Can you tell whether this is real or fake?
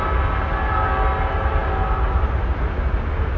real